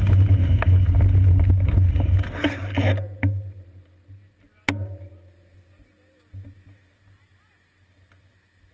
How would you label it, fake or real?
real